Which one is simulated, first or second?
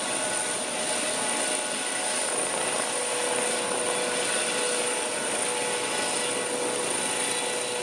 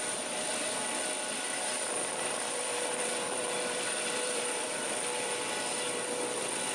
second